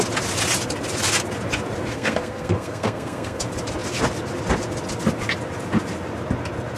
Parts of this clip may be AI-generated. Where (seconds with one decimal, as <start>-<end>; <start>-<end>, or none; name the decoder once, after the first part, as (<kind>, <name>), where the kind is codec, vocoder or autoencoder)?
1.9-3.4 (codec, SNAC)